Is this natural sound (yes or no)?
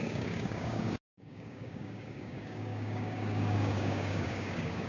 no